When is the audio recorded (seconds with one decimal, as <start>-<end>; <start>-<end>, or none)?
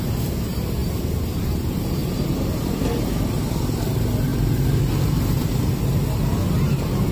0.0-7.1